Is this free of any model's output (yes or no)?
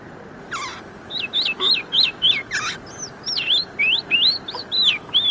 yes